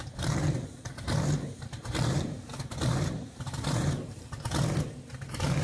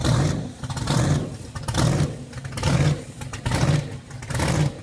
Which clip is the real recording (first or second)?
second